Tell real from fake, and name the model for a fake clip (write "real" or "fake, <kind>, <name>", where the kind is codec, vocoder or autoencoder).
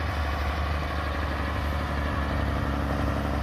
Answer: real